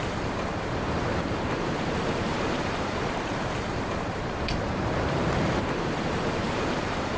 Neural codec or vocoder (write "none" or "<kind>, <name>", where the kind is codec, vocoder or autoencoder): vocoder, BigVGAN v2